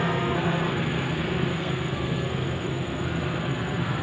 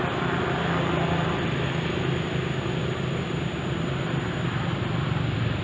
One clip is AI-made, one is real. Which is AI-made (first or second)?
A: first